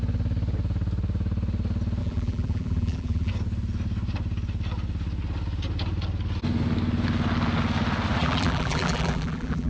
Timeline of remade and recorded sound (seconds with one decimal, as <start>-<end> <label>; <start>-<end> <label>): 0.0-2.0 recorded; 2.0-3.3 remade; 3.3-8.2 recorded; 8.2-9.7 remade